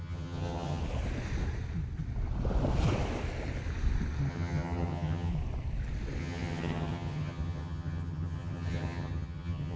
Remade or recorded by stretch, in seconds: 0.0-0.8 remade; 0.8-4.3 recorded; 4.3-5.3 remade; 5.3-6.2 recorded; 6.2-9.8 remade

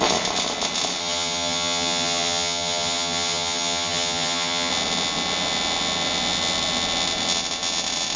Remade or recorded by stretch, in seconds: 0.0-1.0 recorded; 1.0-4.7 remade; 4.7-8.2 recorded

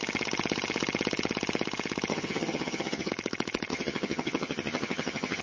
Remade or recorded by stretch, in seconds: 0.0-2.1 recorded; 2.1-3.1 remade; 3.1-3.7 recorded; 3.7-5.4 remade

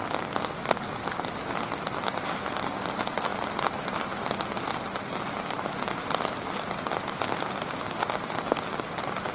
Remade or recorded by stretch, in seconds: 0.0-9.3 recorded